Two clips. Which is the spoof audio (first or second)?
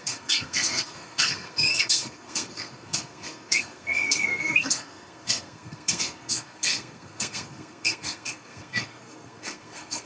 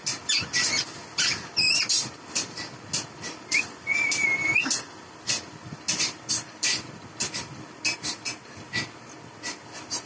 first